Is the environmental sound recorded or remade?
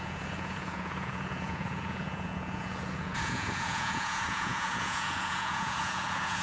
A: remade